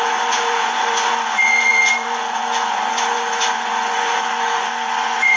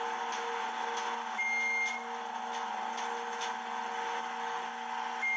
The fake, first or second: first